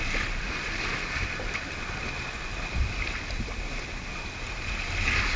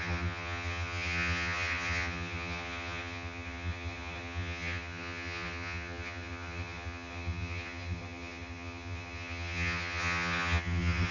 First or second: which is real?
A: first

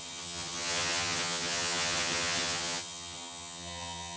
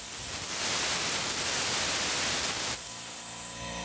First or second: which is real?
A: second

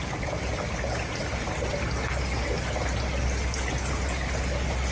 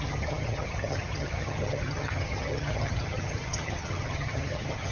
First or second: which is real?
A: first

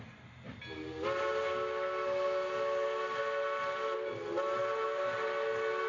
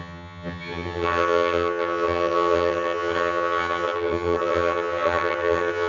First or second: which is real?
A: first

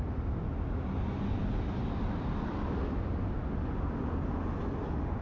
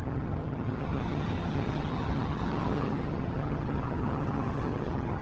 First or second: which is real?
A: first